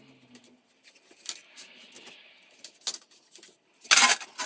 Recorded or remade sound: recorded